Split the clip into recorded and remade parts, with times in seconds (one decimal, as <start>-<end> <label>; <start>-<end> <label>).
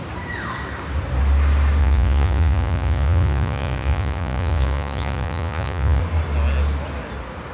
0.0-1.8 recorded; 1.8-6.0 remade; 6.0-7.5 recorded